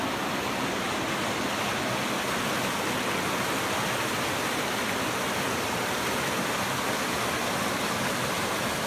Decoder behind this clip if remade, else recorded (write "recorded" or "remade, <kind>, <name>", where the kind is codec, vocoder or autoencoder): recorded